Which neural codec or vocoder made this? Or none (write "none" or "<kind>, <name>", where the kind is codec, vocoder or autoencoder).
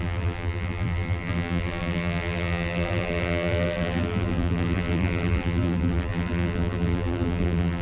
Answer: vocoder, BigVGAN v2